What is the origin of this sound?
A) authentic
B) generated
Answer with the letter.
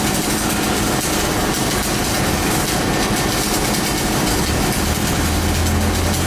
A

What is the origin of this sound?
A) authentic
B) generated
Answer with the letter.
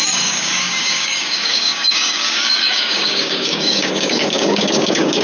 B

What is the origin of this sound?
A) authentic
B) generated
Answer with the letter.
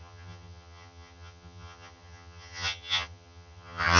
B